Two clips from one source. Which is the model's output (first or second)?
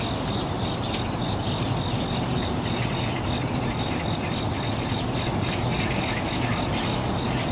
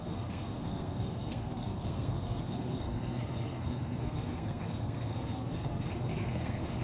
second